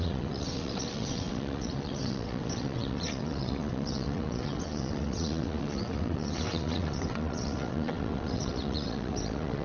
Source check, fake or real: fake